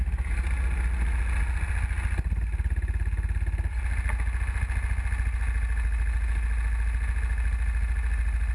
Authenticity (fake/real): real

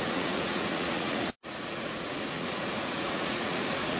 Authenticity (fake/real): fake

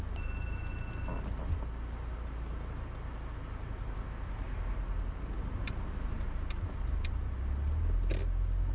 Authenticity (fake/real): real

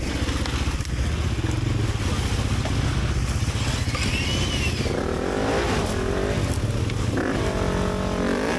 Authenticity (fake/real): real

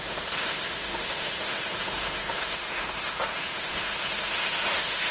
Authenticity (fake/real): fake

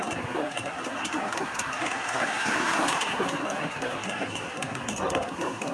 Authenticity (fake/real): fake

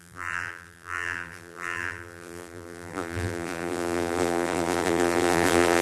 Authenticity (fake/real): fake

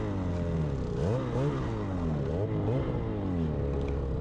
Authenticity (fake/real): real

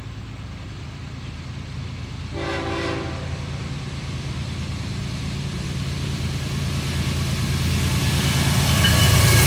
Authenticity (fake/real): real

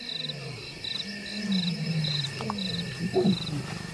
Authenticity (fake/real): real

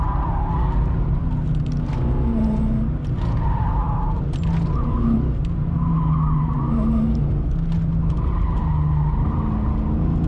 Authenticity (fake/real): real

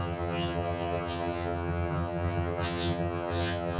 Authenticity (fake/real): fake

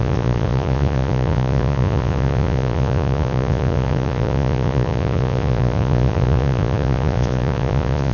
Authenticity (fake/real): fake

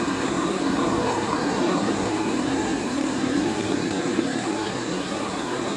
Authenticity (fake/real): fake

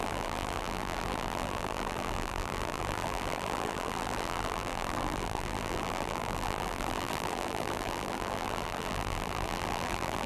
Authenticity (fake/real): fake